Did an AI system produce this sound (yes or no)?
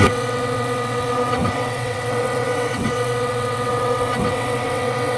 yes